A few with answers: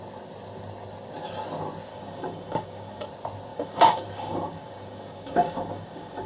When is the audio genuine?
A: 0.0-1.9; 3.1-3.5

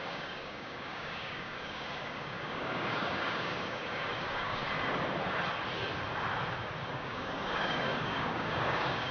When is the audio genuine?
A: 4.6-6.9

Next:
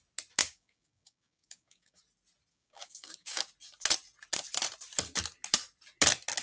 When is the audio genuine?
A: 0.0-0.4; 2.0-2.5; 3.5-6.4

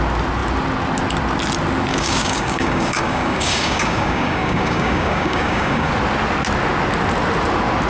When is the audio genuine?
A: 0.0-1.9; 5.9-7.9

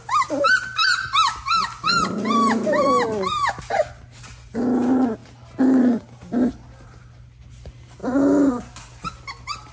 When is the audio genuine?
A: 0.0-9.7

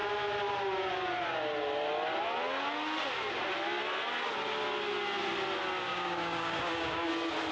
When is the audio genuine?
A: 0.0-5.9; 7.1-7.5

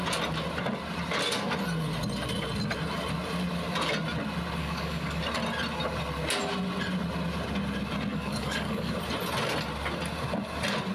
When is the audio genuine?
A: 0.0-4.6; 5.2-8.1; 8.9-10.9

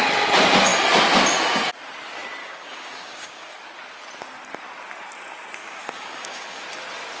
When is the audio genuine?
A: 0.0-2.4; 3.6-5.6; 6.6-7.2